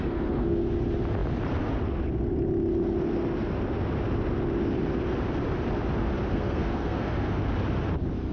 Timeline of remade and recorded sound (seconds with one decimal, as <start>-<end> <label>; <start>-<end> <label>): 0.0-0.6 remade; 0.6-6.3 recorded; 6.3-7.4 remade; 7.4-8.3 recorded